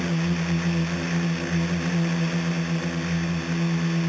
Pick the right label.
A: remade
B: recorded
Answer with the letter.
B